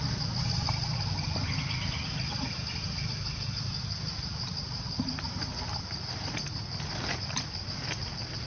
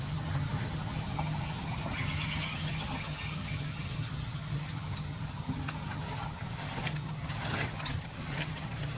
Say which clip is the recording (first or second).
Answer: first